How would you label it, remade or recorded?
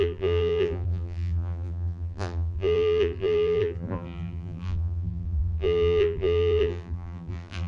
remade